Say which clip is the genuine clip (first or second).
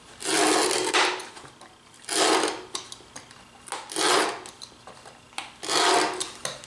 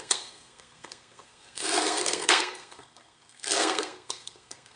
first